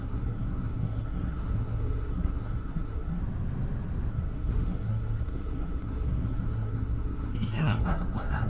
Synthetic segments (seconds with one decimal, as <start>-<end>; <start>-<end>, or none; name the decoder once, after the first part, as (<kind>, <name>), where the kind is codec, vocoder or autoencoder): 0.0-3.2 (codec, SNAC); 4.1-8.5